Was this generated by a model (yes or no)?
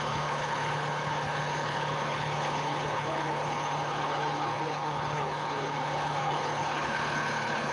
yes